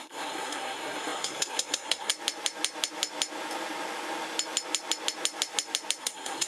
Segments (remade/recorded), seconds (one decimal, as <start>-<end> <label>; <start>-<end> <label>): 0.0-2.1 remade; 2.1-6.0 recorded; 6.0-6.5 remade